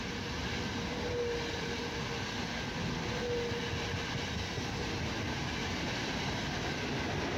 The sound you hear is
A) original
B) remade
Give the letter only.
A